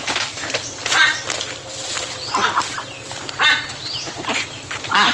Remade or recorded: recorded